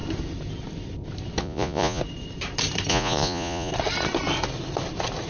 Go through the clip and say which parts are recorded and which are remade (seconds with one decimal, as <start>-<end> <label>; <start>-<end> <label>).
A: 0.0-1.4 recorded; 1.4-2.0 remade; 2.0-2.9 recorded; 2.9-3.7 remade; 3.7-5.3 recorded